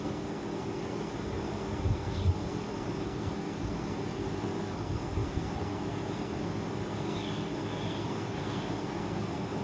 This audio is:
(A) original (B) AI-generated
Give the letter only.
B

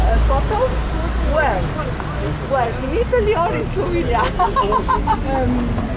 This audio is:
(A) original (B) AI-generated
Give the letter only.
A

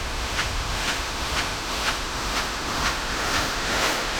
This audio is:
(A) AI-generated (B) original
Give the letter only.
A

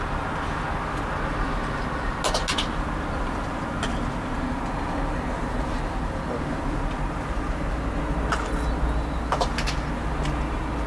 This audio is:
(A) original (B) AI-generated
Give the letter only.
A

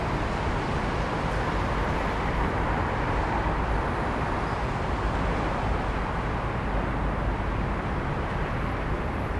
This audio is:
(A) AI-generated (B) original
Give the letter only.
B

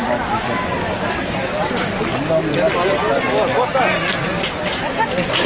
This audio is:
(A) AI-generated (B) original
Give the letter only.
B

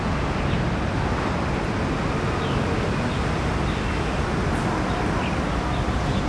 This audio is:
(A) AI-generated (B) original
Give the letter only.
B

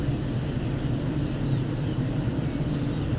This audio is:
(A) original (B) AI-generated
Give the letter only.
A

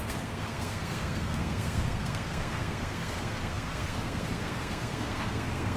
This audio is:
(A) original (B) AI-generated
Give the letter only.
B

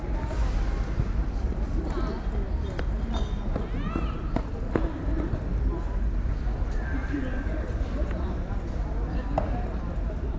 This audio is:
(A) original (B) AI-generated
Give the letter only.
A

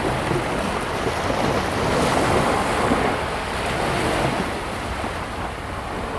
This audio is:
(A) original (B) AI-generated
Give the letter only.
A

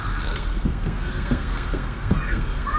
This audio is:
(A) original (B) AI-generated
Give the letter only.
B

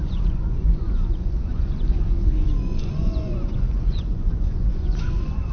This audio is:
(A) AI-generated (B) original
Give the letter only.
A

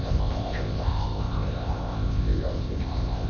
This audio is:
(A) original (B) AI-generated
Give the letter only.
B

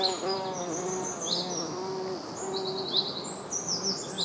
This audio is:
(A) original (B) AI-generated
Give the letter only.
A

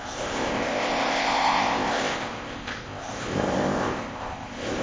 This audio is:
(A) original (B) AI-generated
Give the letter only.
B